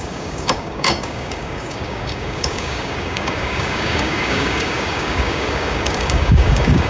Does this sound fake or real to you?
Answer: fake